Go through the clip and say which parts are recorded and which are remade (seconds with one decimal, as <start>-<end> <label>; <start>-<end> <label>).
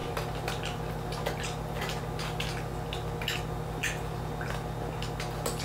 0.0-5.6 recorded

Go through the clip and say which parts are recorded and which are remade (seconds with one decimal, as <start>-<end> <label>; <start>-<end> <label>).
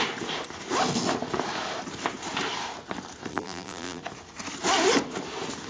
0.0-3.3 recorded; 3.3-4.0 remade; 4.0-5.7 recorded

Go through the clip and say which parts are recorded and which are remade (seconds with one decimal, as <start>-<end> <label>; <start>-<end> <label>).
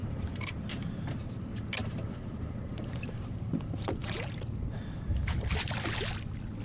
0.0-0.6 remade; 0.6-1.8 recorded; 1.8-5.5 remade; 5.5-6.6 recorded